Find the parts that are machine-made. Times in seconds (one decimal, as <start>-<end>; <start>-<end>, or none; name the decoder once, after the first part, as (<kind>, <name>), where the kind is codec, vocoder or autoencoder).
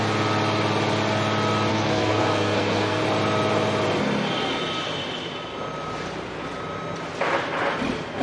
1.7-3.0 (codec, SNAC)